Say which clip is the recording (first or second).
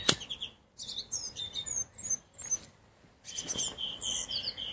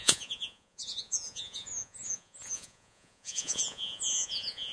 first